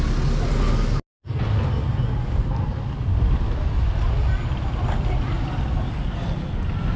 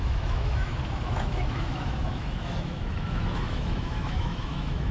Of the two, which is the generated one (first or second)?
second